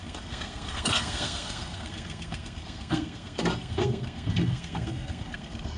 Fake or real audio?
fake